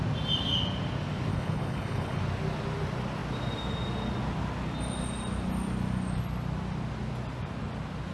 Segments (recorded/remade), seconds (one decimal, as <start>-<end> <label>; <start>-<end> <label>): 0.0-1.3 recorded; 1.3-2.2 remade; 2.2-8.1 recorded